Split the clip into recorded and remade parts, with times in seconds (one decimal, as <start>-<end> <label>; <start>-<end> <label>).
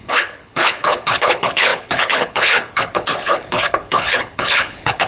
0.0-5.1 remade